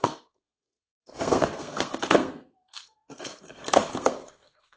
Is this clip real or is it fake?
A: fake